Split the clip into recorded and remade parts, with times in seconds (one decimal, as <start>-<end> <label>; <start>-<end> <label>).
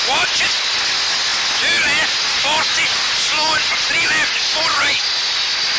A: 0.0-5.8 recorded